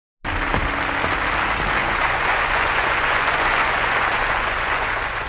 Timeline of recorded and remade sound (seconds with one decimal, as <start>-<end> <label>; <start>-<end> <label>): 0.0-1.8 recorded; 1.8-5.3 remade